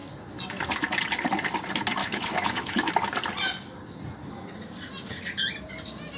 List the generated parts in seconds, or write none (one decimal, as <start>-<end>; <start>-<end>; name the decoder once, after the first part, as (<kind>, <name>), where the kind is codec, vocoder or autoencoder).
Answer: 2.0-2.9 (autoencoder, DAC-VAE)